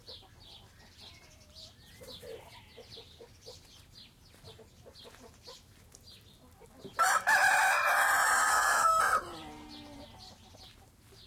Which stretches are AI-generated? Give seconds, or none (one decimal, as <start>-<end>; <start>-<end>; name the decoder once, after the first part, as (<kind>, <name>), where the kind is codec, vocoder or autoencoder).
8.5-9.0 (codec, SNAC)

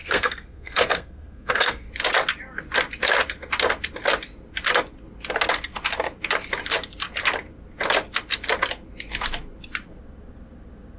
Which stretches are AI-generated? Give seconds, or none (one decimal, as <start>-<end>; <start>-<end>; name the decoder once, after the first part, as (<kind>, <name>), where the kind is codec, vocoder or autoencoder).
0.0-1.9 (codec, SNAC)

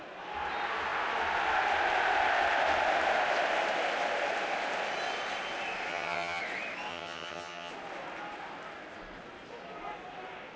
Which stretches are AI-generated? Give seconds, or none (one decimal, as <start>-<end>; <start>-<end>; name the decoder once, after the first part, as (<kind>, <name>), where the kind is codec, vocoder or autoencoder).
5.9-6.4 (vocoder, HiFi-GAN); 6.9-7.7

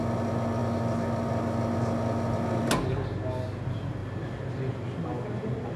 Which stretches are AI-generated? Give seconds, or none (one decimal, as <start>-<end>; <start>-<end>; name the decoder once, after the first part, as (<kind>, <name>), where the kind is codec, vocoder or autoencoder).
none

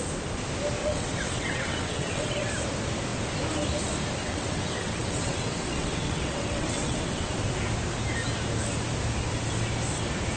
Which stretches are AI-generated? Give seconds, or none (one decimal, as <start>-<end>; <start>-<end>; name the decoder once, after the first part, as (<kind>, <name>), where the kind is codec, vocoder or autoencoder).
0.8-2.5 (vocoder, WaveNeXt); 4.2-7.3

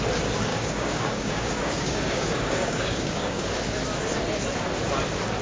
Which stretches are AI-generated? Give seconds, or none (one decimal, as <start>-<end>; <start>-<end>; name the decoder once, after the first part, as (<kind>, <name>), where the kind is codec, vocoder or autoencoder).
0.5-3.6 (codec, DAC)